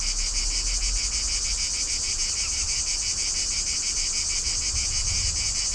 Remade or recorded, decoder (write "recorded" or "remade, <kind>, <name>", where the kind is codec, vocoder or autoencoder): recorded